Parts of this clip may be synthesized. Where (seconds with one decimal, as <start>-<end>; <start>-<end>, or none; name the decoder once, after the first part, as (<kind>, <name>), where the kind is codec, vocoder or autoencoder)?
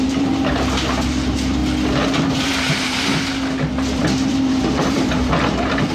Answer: 0.0-1.6 (vocoder, BigVGAN v2); 2.3-3.1; 3.7-5.9